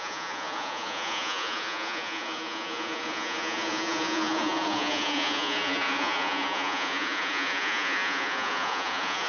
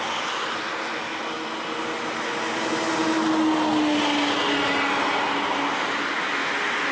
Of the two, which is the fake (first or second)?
first